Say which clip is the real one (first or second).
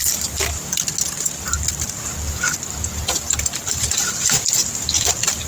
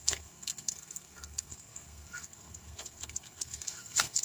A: first